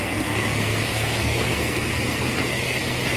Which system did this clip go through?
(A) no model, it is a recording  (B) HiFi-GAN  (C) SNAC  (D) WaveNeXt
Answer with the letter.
C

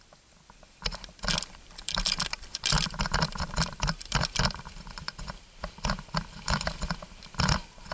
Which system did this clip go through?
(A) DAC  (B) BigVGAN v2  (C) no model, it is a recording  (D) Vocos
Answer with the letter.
B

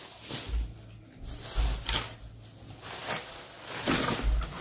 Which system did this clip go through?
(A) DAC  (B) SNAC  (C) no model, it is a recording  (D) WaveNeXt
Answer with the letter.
C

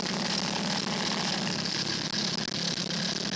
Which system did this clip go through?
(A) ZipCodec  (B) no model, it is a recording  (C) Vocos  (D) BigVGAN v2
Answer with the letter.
B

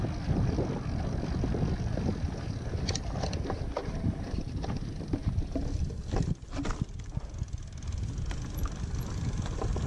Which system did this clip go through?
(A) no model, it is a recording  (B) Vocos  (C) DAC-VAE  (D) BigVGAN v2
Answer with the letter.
A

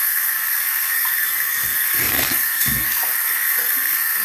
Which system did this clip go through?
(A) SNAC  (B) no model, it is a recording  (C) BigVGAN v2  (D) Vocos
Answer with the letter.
A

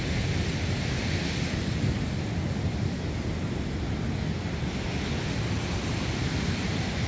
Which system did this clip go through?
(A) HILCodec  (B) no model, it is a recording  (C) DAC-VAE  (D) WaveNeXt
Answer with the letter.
B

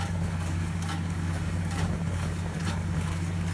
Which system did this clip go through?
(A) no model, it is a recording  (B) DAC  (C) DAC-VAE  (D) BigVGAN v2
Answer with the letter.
B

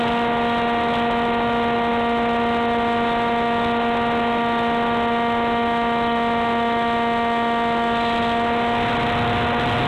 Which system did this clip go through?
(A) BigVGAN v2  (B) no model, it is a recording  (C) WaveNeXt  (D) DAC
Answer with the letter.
B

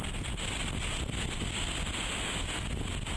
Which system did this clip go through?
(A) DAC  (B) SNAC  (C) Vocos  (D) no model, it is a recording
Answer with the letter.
D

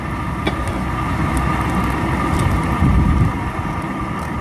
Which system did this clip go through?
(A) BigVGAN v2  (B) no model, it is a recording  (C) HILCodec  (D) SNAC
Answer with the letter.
B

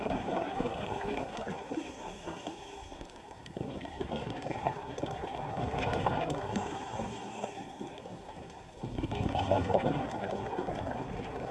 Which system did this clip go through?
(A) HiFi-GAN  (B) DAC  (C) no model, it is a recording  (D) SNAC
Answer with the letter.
D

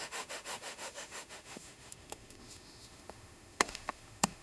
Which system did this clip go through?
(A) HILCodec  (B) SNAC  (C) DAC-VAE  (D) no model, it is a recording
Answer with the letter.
C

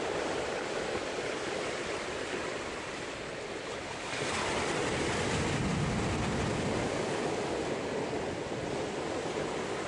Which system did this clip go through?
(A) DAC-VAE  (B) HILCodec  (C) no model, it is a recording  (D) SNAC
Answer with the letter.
C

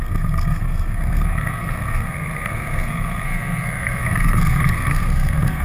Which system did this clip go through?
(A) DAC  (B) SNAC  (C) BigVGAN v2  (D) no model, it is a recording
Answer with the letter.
B